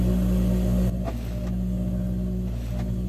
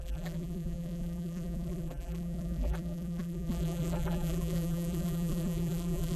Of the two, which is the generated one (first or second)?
second